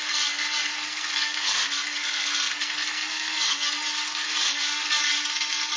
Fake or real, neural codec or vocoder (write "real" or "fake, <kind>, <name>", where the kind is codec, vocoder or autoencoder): fake, codec, SNAC